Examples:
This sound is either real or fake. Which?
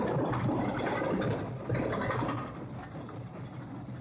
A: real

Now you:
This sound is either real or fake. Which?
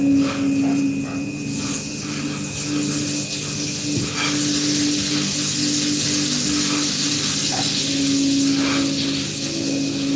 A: real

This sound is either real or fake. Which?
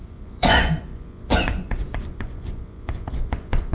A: fake